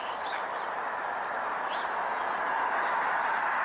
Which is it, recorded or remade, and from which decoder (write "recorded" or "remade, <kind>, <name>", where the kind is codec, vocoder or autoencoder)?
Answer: remade, vocoder, BigVGAN v2